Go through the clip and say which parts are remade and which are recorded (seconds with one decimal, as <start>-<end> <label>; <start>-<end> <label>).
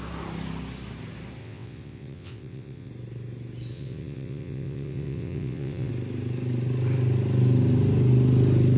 0.0-1.4 recorded; 1.4-2.9 remade; 2.9-3.7 recorded; 3.7-5.9 remade; 5.9-8.8 recorded